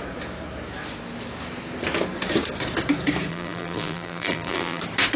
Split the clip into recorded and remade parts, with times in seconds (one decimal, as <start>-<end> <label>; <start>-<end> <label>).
0.0-3.3 recorded; 3.3-4.8 remade; 4.8-5.2 recorded